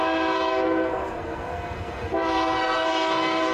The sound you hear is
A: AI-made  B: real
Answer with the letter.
A